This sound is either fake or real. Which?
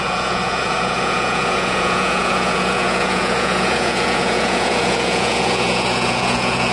fake